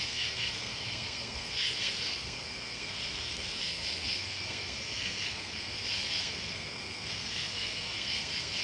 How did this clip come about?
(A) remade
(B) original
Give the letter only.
A